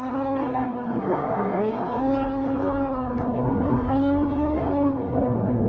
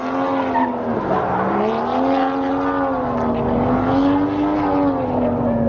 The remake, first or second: first